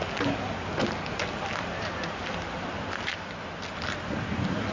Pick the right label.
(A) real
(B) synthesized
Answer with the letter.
A